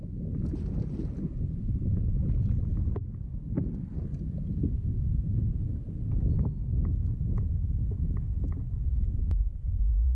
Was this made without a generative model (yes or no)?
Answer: yes